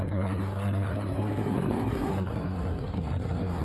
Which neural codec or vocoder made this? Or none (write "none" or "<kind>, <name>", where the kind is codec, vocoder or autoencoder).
codec, SNAC